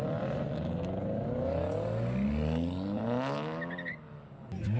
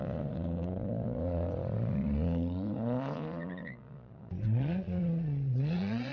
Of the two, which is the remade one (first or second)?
second